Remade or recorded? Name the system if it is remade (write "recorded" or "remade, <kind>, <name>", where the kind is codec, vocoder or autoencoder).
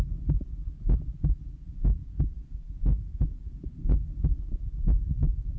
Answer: recorded